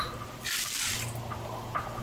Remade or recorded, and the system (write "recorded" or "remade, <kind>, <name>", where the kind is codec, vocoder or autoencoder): recorded